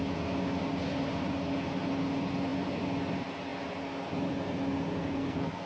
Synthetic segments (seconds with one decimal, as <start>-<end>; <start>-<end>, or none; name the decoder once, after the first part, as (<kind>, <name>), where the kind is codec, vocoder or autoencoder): 5.0-5.7 (codec, SNAC)